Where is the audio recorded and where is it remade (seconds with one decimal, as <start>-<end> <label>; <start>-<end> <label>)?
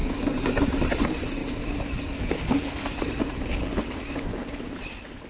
0.0-0.6 remade; 0.6-5.3 recorded